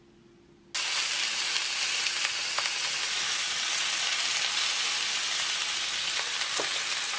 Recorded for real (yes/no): yes